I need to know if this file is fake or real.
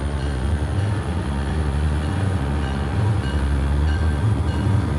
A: fake